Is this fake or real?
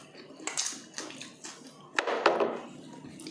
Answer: real